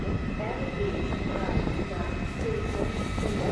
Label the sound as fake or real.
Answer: real